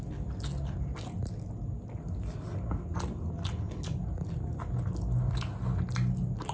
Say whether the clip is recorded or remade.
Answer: recorded